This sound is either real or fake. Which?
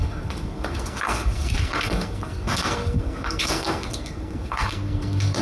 fake